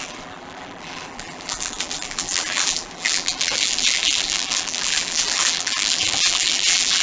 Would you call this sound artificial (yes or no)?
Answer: yes